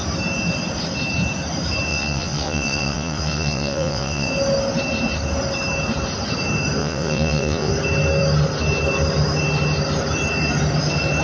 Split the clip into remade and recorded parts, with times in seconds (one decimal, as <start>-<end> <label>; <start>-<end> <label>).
0.0-1.9 recorded; 1.9-4.3 remade; 4.3-6.8 recorded; 6.8-7.7 remade; 7.7-11.2 recorded